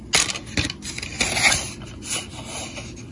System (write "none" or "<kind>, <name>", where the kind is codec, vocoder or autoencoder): none